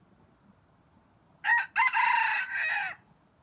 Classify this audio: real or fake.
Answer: real